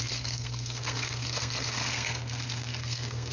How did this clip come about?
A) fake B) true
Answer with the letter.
A